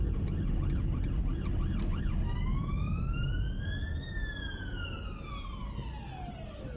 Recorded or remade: recorded